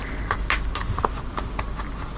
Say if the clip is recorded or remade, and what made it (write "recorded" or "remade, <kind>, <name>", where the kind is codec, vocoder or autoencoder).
recorded